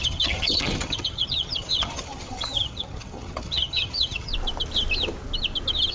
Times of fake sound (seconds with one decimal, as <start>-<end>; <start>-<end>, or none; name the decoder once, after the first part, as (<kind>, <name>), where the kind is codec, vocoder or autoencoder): 0.0-4.3 (vocoder, HiFi-GAN)